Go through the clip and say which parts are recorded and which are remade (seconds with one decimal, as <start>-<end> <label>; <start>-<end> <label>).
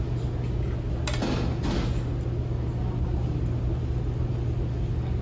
0.0-5.2 recorded